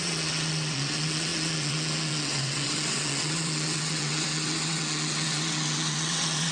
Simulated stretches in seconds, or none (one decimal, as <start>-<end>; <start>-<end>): 0.0-6.5